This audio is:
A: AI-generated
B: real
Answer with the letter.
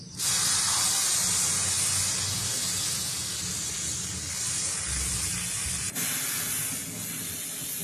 B